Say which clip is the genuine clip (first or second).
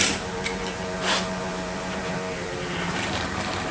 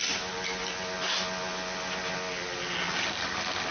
second